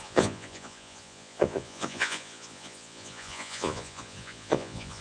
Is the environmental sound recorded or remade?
remade